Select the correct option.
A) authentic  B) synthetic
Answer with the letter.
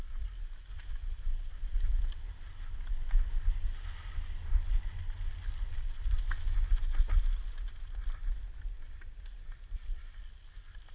A